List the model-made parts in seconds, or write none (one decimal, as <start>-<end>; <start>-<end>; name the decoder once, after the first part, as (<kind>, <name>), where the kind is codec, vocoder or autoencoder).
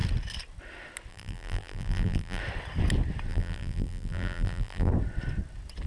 1.1-2.4 (vocoder, BigVGAN v2); 3.3-4.9